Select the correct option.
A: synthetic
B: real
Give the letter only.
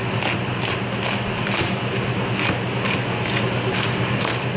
B